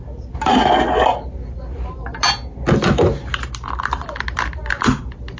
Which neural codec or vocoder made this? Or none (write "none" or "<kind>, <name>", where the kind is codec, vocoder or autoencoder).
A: none